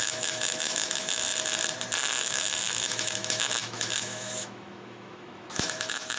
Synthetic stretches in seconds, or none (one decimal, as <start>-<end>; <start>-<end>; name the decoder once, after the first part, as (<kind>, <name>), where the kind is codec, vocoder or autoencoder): 0.0-1.3 (autoencoder, DAC-VAE); 2.2-6.2